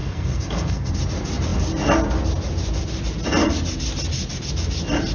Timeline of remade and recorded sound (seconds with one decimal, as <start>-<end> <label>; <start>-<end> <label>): 0.0-0.9 remade; 0.9-5.1 recorded